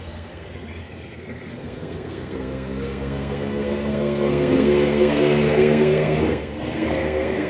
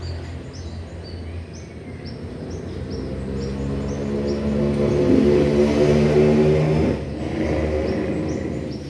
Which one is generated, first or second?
first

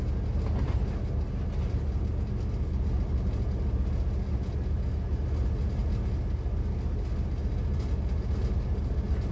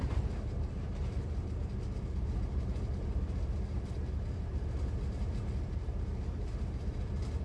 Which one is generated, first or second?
second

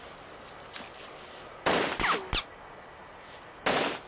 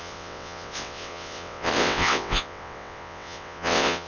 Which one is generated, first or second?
second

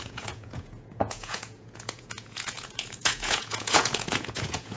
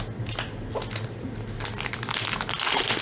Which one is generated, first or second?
first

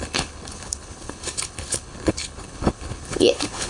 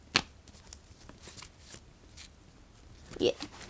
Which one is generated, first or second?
first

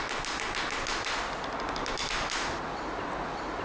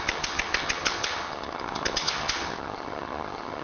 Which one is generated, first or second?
second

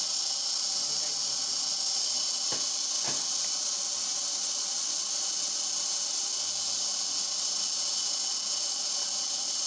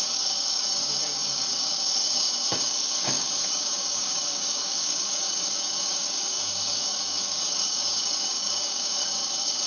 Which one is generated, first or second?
second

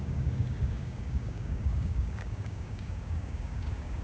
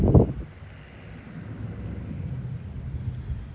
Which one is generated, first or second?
first